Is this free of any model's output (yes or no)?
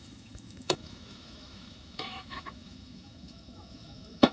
no